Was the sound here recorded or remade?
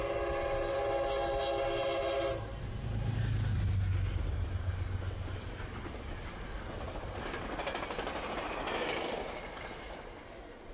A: recorded